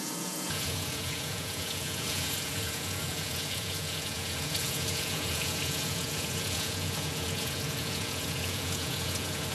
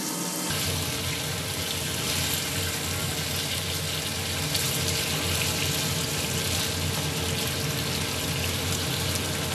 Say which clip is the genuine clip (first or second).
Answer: second